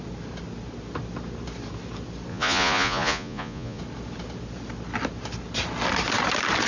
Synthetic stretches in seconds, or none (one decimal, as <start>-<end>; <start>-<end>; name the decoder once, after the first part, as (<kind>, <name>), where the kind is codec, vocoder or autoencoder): 2.3-3.8 (vocoder, Vocos)